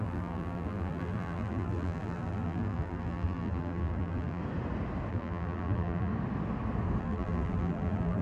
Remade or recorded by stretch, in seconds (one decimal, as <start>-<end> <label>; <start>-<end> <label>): 0.0-4.4 remade; 4.4-5.1 recorded; 5.1-6.1 remade; 6.1-7.0 recorded; 7.0-8.2 remade